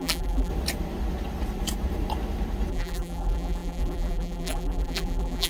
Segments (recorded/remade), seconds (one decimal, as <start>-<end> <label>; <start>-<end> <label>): 0.0-0.5 remade; 0.5-2.7 recorded; 2.7-5.5 remade